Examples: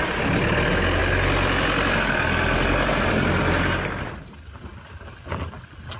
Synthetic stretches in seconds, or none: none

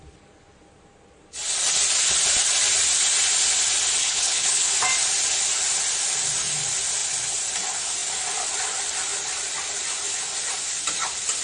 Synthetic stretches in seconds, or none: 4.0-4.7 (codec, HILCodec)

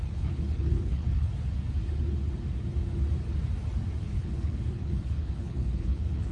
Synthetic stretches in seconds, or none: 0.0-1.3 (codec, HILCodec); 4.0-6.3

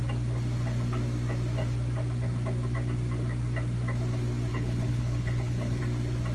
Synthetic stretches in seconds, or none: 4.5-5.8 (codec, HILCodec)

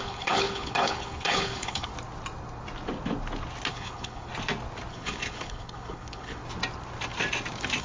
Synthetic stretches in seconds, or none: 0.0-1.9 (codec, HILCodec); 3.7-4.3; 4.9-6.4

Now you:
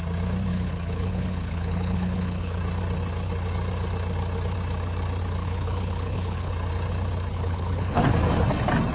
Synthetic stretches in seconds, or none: 0.5-2.6 (codec, HILCodec); 5.4-6.5; 7.3-8.0